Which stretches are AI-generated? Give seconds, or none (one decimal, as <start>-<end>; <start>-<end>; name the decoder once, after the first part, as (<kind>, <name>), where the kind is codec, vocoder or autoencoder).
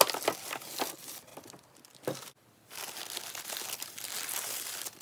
none